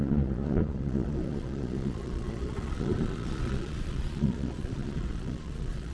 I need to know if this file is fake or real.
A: fake